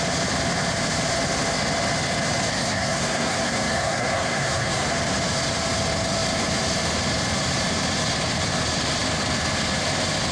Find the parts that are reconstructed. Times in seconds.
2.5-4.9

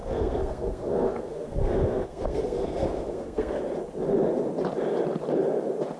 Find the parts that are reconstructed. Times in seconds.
0.0-3.6

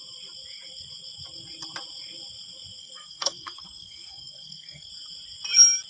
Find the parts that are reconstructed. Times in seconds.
2.8-4.9

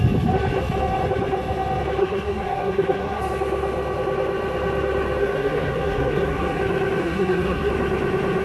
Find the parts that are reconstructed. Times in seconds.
2.0-3.2; 5.2-6.6; 7.0-7.7

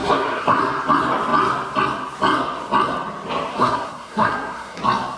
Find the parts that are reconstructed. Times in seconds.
0.0-0.6; 3.5-4.8

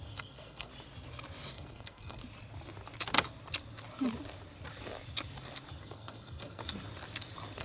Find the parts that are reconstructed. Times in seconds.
0.0-0.7; 1.5-2.2; 5.8-6.6

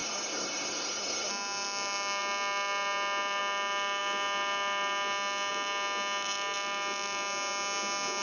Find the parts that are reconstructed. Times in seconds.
0.0-1.3